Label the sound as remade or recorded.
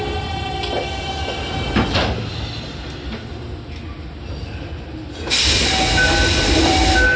recorded